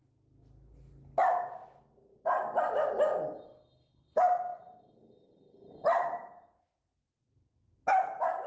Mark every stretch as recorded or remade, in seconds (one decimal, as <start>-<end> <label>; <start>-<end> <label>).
0.0-4.5 recorded; 4.5-7.2 remade; 7.2-8.5 recorded